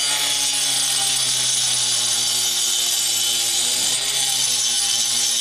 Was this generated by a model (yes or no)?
no